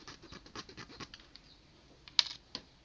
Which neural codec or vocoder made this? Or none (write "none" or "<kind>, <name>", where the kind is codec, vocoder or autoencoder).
none